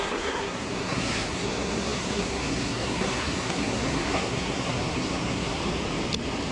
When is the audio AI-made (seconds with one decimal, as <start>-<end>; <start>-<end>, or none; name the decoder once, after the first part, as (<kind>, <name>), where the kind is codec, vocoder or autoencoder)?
0.0-5.6 (codec, SNAC)